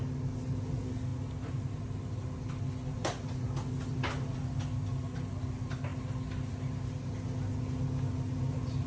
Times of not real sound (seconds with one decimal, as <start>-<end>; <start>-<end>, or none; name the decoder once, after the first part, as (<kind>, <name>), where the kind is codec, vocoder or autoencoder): none